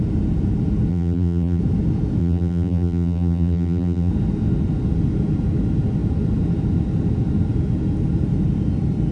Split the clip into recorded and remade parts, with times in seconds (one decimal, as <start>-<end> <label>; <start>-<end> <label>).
0.0-0.9 recorded; 0.9-1.6 remade; 1.6-2.2 recorded; 2.2-4.1 remade; 4.1-9.1 recorded